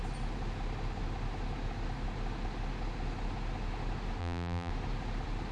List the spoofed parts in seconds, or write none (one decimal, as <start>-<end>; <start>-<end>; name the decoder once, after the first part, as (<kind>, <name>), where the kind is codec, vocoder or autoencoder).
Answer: 4.2-4.7 (vocoder, BigVGAN v2)

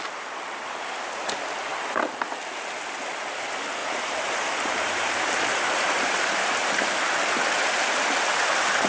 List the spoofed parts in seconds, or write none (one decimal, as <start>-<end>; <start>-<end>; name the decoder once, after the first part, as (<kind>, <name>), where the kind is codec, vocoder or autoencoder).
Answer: 3.8-6.9 (vocoder, BigVGAN v2)

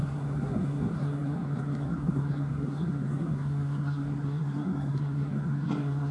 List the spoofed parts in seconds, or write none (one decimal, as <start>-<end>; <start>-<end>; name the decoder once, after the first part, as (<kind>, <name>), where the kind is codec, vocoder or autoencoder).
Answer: 0.0-6.1 (codec, SNAC)